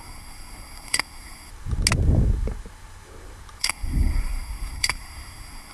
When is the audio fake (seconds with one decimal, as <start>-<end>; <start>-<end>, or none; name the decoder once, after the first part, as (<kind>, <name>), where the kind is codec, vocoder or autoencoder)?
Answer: 0.0-1.5 (codec, SNAC); 3.6-5.7